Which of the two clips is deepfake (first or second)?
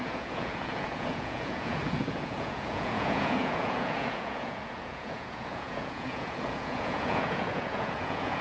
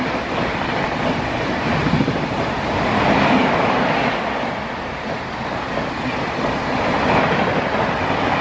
first